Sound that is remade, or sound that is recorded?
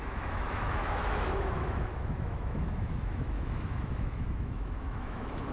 remade